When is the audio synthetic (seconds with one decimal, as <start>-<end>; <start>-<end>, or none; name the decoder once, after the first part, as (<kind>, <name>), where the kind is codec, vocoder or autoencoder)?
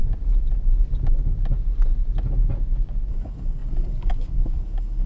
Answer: 3.1-5.1 (codec, DAC)